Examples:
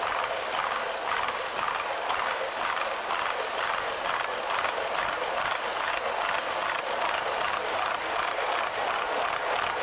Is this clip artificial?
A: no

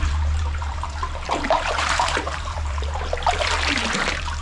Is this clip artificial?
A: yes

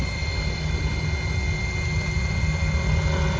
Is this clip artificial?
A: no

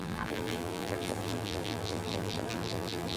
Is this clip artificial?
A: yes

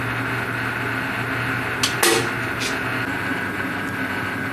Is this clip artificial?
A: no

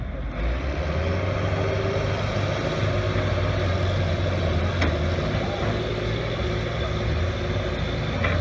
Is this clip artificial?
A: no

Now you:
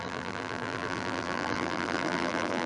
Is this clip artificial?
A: yes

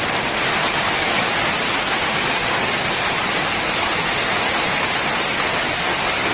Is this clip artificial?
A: no